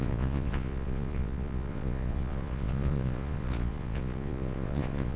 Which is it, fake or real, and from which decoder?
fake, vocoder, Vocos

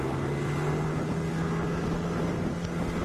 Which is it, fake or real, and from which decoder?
real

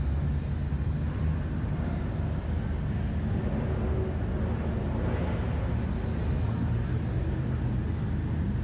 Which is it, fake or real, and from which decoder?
real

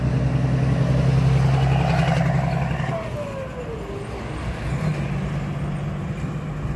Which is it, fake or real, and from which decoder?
real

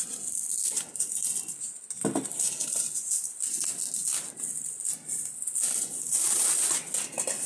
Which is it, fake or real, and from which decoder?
real